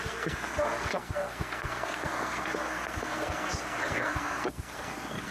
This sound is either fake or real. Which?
fake